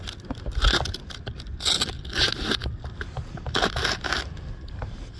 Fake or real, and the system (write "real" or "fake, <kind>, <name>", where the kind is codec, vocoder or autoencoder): real